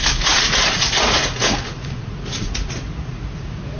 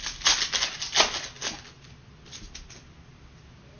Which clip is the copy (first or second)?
first